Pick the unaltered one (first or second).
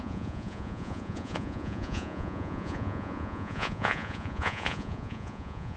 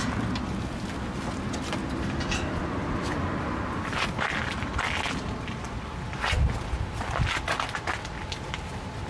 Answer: second